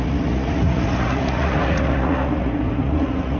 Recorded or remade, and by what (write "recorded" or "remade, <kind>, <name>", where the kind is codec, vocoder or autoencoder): remade, vocoder, Vocos